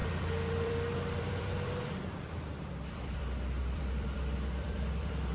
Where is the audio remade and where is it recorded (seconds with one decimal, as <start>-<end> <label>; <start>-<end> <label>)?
0.0-3.2 remade; 3.2-3.6 recorded; 3.6-5.3 remade